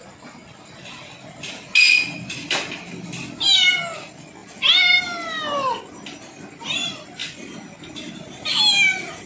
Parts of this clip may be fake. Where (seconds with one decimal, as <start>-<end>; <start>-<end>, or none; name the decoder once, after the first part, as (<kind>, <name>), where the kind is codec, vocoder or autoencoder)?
none